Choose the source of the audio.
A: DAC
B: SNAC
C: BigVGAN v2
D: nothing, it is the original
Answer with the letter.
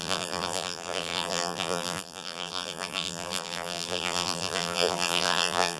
C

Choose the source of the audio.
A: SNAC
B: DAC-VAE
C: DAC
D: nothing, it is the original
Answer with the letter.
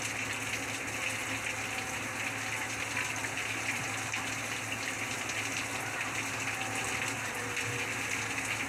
D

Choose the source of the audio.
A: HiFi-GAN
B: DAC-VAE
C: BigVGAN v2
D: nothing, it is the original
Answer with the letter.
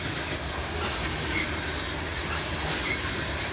D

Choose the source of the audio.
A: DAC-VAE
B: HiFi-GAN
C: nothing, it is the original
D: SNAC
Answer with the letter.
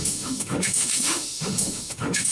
A